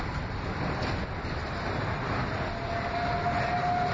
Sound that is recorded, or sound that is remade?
recorded